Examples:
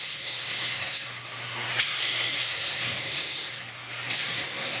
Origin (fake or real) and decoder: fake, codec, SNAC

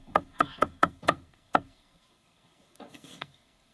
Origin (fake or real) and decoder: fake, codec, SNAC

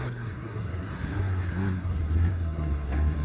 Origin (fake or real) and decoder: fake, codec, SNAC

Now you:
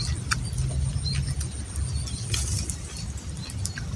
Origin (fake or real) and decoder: real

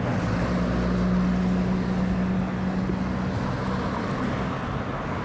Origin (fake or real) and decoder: real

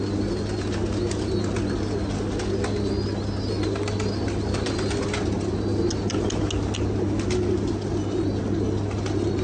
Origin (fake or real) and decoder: real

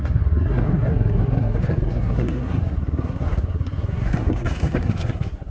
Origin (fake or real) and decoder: fake, codec, SNAC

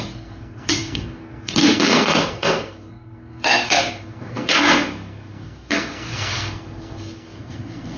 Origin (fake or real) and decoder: fake, codec, SNAC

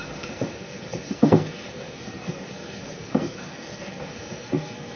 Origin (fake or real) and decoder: fake, codec, SNAC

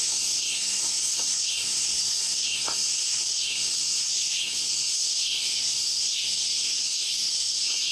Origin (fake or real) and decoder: fake, codec, SNAC